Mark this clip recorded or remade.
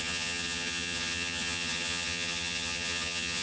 remade